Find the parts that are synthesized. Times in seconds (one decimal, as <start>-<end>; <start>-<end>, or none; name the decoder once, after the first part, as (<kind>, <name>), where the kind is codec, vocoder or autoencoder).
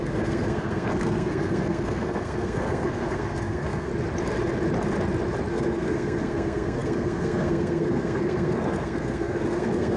0.0-3.9 (codec, SNAC); 5.5-10.0